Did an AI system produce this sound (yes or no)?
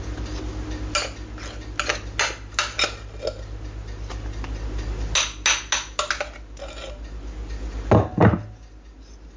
no